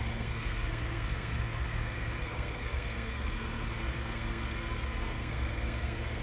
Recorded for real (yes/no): no